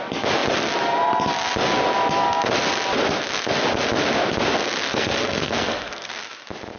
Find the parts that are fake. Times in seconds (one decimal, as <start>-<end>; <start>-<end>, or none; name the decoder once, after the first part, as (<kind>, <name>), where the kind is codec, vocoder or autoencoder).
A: 4.9-6.1 (codec, SNAC)